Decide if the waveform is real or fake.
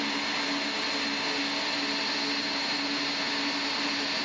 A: real